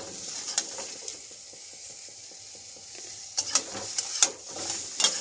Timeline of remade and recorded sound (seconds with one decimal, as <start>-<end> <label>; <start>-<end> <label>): 0.0-1.7 recorded; 1.7-2.2 remade; 2.2-5.2 recorded